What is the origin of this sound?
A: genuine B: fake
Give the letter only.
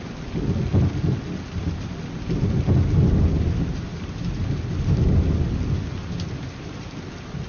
A